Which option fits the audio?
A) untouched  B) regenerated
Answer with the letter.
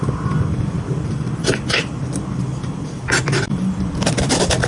B